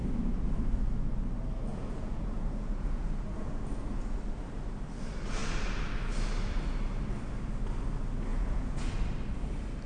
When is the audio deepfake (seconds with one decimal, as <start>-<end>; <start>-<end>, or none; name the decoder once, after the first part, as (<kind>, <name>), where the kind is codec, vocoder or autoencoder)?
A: 1.7-3.6 (vocoder, Vocos); 8.3-8.9